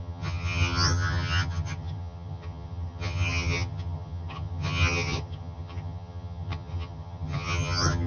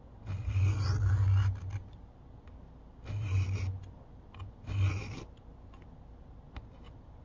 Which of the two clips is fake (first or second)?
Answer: first